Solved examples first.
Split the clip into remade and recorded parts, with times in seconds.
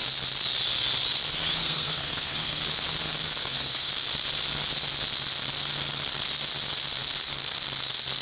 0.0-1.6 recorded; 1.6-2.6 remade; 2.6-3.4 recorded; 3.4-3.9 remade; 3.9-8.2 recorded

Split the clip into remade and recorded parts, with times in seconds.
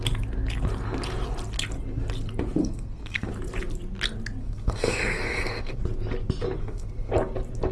0.0-2.6 recorded; 2.6-3.3 remade; 3.3-4.4 recorded; 4.4-5.8 remade; 5.8-6.6 recorded; 6.6-7.1 remade; 7.1-7.7 recorded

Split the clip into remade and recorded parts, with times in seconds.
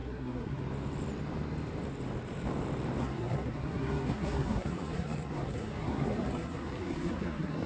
0.0-0.6 remade; 0.6-3.0 recorded; 3.0-7.7 remade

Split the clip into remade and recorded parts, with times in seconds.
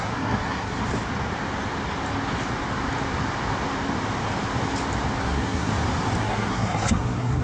0.0-0.8 remade; 0.8-5.2 recorded; 5.2-5.7 remade; 5.7-6.2 recorded; 6.2-7.4 remade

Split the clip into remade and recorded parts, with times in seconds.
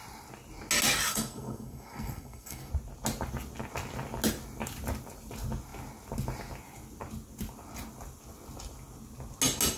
0.0-1.1 recorded; 1.1-2.7 remade; 2.7-9.8 recorded